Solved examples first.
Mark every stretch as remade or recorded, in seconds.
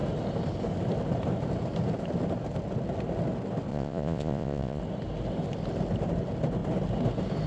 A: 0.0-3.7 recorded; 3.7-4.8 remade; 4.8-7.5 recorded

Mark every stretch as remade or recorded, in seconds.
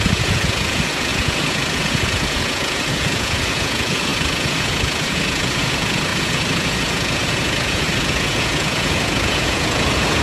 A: 0.0-10.2 remade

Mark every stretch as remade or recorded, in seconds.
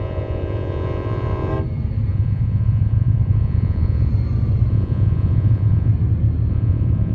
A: 0.0-1.5 remade; 1.5-2.1 recorded; 2.1-4.1 remade; 4.1-4.7 recorded; 4.7-5.9 remade; 5.9-6.5 recorded; 6.5-7.1 remade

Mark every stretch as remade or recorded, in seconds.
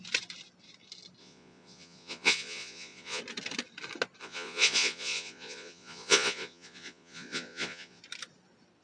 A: 0.0-1.2 recorded; 1.2-3.2 remade; 3.2-4.2 recorded; 4.2-8.0 remade; 8.0-8.8 recorded